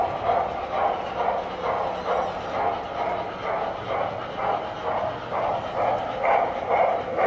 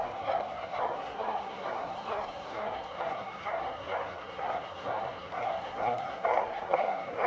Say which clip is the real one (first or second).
first